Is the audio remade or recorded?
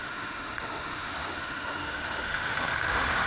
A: remade